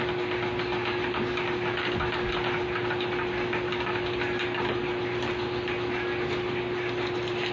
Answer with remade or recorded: recorded